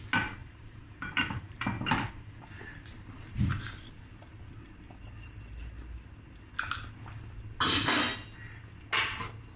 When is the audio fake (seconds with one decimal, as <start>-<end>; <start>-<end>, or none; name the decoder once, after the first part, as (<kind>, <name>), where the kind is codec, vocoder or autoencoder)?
0.4-3.6 (vocoder, BigVGAN v2)